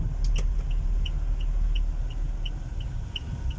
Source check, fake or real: real